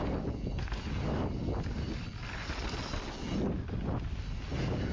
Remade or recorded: recorded